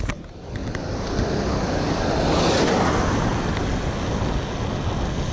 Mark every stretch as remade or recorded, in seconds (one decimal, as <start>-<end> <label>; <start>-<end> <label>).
0.0-5.3 recorded